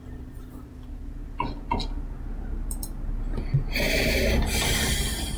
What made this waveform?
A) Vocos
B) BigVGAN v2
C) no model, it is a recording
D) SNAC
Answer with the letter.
C